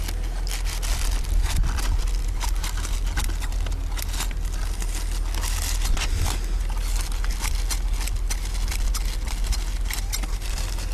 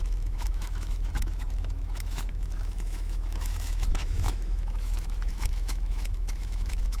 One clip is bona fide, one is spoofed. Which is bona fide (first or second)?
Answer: first